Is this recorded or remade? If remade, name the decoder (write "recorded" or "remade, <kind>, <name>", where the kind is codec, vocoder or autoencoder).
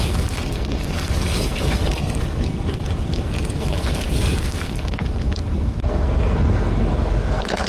remade, codec, SNAC